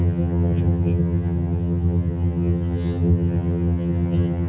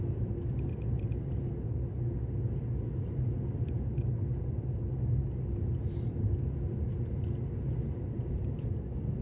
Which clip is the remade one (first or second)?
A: first